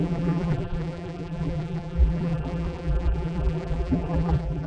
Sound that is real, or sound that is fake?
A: fake